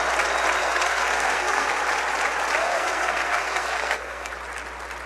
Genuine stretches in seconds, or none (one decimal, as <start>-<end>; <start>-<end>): 0.0-0.6; 1.8-2.6; 4.3-5.1

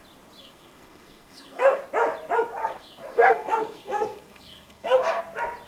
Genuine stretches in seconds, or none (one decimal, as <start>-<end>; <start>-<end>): 0.0-0.4; 1.8-2.6; 5.2-5.7

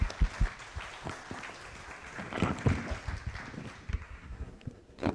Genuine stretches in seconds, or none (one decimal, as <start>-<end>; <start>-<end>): 0.0-3.9

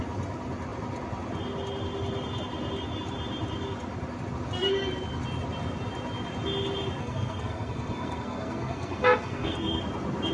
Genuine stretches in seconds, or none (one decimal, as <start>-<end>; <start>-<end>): 0.0-7.0; 9.8-10.3

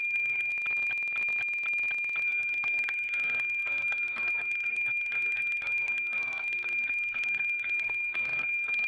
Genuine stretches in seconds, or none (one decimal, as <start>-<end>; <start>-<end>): 0.5-2.2